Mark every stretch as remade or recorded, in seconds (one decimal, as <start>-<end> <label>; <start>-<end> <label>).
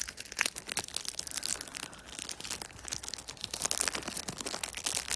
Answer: 0.0-5.2 recorded